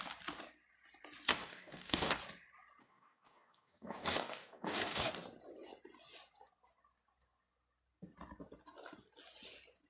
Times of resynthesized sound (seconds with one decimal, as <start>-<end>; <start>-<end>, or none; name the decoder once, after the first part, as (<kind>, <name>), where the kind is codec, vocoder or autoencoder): 1.3-2.2 (codec, DAC); 2.8-5.1